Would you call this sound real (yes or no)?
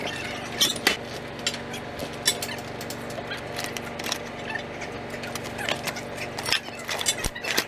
yes